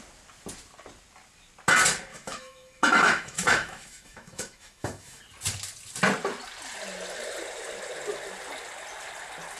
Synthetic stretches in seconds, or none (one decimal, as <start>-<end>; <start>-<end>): 2.1-5.2